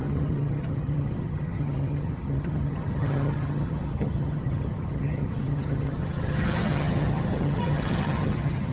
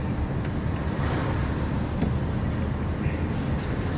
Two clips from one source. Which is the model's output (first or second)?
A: first